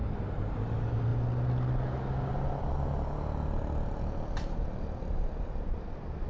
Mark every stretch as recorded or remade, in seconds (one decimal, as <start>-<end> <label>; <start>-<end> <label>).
0.0-6.3 recorded